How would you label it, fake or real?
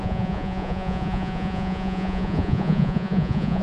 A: fake